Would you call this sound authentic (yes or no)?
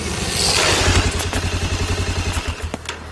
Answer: yes